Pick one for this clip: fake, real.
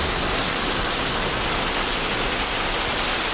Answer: real